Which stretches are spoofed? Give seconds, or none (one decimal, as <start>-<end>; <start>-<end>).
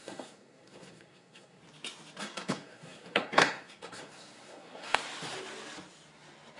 0.0-1.6; 2.2-5.0